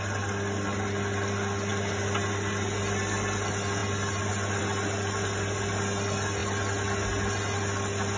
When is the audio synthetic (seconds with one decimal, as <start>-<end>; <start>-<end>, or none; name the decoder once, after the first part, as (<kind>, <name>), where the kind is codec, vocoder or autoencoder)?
none